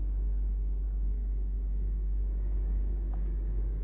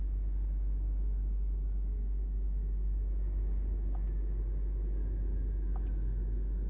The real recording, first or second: second